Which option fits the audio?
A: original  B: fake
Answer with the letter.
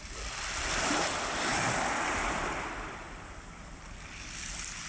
A